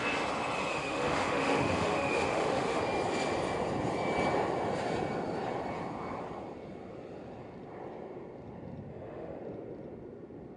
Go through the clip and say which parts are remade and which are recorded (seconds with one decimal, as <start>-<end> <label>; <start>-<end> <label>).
0.0-0.7 recorded; 0.7-2.8 remade; 2.8-8.9 recorded; 8.9-9.4 remade; 9.4-10.6 recorded